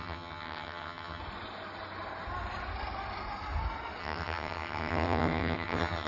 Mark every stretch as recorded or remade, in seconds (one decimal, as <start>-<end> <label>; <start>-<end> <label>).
0.0-1.2 remade; 1.2-4.0 recorded; 4.0-6.1 remade